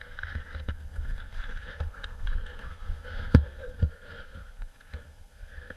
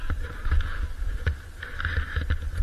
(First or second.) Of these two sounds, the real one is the second